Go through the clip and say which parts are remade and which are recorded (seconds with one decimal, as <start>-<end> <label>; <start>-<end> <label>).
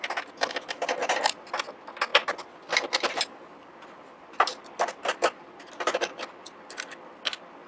0.0-2.1 recorded; 2.1-6.7 remade; 6.7-7.7 recorded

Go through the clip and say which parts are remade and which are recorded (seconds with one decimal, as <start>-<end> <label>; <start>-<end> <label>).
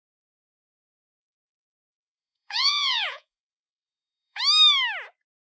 0.0-1.2 recorded; 1.2-4.4 remade; 4.4-5.5 recorded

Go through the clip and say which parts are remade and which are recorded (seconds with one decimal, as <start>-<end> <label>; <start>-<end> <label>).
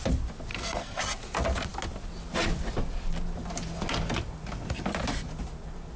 0.0-0.5 recorded; 0.5-1.0 remade; 1.0-6.0 recorded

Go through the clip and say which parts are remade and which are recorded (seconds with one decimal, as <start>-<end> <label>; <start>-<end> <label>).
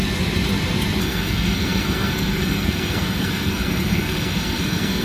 0.0-1.0 recorded; 1.0-5.0 remade